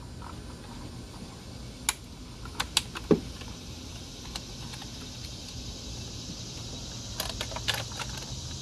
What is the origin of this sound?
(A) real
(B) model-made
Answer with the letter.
A